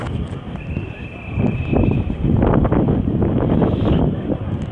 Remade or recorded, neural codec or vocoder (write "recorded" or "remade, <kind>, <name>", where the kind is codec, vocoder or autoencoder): recorded